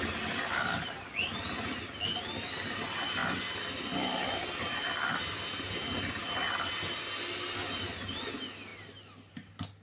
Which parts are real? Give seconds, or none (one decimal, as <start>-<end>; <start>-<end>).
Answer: 0.0-9.8